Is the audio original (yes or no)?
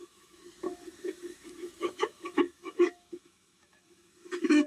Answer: no